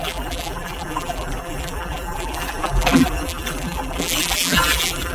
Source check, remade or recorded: remade